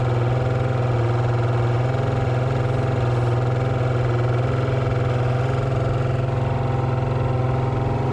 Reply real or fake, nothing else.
real